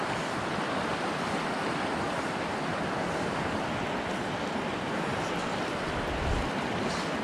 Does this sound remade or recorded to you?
recorded